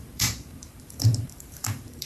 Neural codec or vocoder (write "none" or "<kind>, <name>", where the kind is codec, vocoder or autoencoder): vocoder, BigVGAN v2